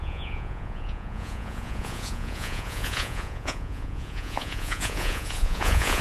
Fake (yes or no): yes